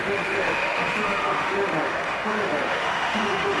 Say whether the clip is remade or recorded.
remade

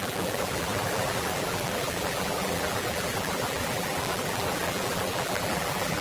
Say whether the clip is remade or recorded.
remade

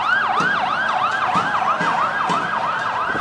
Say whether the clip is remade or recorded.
recorded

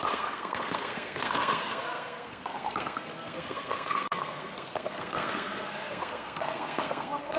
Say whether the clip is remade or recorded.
remade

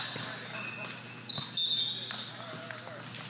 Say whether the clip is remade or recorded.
recorded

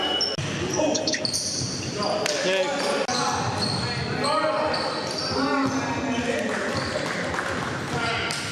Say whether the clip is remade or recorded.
recorded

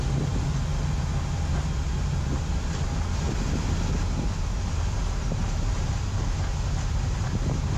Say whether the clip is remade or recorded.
recorded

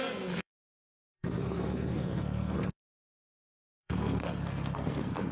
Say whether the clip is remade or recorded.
remade